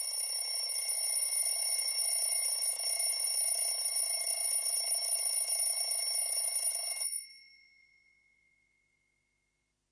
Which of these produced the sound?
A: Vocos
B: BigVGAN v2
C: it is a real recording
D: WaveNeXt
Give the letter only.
A